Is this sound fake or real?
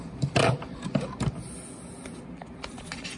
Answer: real